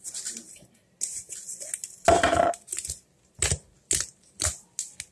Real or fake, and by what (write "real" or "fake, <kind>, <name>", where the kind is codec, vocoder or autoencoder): real